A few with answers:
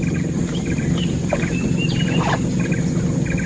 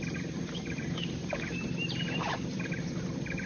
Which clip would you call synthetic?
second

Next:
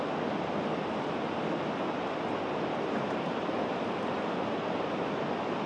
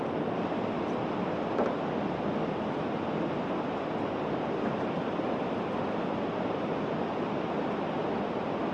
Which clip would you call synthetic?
second